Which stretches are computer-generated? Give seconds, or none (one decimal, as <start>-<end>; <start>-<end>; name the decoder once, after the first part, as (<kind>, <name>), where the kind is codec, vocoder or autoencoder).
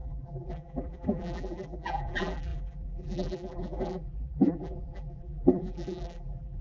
0.0-6.6 (vocoder, BigVGAN v2)